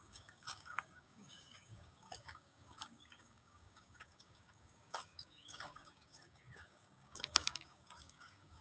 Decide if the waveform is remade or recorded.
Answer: remade